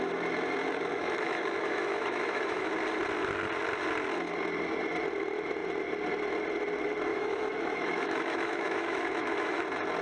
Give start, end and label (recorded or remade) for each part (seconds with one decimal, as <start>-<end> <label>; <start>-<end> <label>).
0.0-0.9 recorded; 0.9-2.7 remade; 2.7-7.1 recorded; 7.1-9.6 remade; 9.6-10.0 recorded